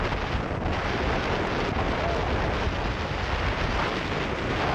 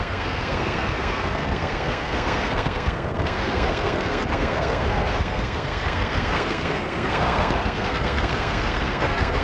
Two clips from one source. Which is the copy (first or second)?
second